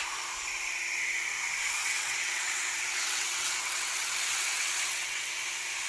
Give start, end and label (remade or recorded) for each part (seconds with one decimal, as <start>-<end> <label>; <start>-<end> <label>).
0.0-1.8 recorded; 1.8-5.3 remade; 5.3-5.9 recorded